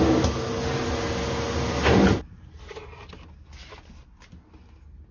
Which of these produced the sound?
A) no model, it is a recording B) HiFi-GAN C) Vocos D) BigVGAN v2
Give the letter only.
A